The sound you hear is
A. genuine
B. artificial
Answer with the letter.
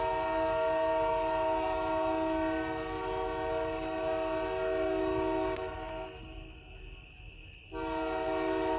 A